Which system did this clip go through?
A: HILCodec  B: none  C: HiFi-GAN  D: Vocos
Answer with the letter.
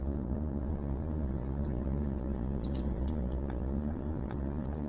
D